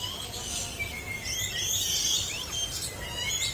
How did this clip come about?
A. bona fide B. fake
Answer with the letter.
A